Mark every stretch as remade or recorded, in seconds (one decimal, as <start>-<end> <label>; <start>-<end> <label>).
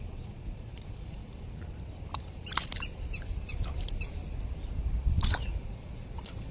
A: 0.0-1.2 remade; 1.2-5.1 recorded; 5.1-6.5 remade